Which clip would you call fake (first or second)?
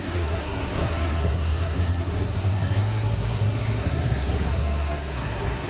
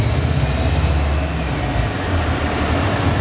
first